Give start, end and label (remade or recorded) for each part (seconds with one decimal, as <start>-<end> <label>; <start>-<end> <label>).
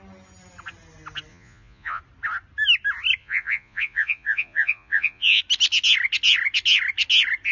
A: 0.0-1.3 recorded; 1.3-2.0 remade; 2.0-3.2 recorded; 3.2-5.4 remade; 5.4-7.5 recorded